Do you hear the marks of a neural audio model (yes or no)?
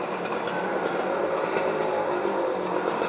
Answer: no